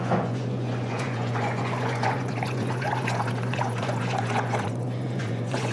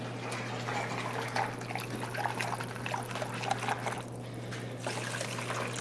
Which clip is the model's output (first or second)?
first